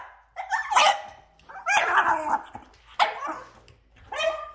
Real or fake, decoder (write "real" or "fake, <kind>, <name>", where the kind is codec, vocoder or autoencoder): real